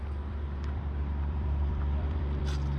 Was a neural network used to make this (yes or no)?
yes